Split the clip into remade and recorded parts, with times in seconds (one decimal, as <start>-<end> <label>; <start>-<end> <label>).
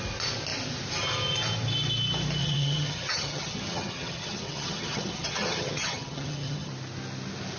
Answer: 0.0-2.4 recorded; 2.4-6.7 remade; 6.7-7.6 recorded